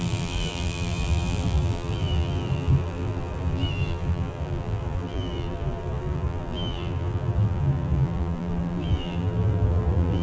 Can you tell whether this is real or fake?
fake